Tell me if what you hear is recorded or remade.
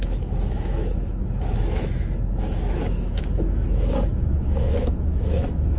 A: remade